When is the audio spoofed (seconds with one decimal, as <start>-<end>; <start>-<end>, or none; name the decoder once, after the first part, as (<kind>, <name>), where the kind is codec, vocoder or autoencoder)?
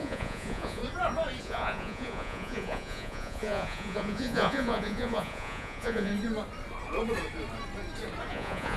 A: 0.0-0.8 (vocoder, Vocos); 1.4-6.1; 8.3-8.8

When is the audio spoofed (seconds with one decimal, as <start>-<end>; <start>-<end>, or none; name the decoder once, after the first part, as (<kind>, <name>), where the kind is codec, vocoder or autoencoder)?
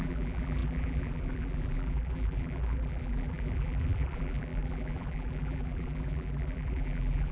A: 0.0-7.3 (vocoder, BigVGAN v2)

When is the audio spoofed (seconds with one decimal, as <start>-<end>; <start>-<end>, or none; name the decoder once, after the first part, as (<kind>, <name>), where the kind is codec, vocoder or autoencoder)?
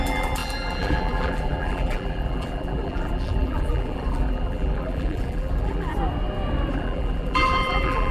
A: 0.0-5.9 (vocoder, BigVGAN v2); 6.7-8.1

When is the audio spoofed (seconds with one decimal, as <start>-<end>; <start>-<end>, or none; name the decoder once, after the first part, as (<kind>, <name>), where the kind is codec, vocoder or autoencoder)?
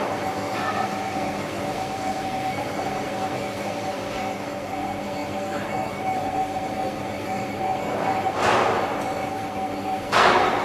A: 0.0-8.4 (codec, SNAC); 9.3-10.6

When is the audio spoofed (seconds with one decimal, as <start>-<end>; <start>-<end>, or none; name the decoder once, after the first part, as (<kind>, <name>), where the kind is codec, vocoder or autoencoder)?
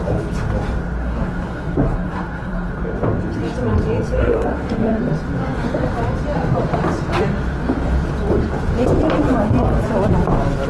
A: 1.0-2.7 (codec, SNAC); 4.2-5.0